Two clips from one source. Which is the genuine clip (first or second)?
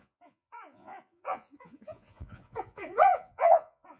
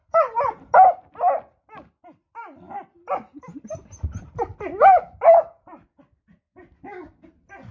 second